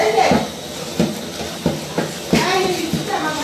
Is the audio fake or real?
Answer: real